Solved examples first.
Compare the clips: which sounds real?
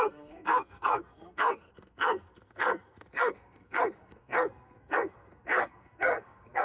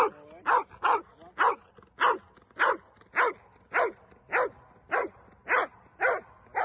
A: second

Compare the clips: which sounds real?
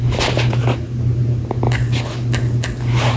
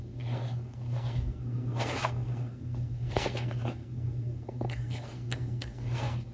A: first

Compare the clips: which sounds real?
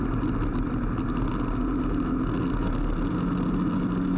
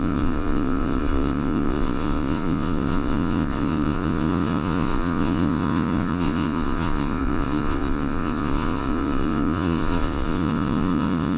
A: first